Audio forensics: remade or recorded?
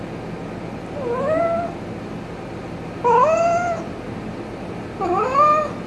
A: recorded